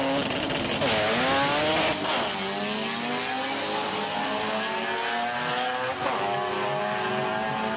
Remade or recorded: recorded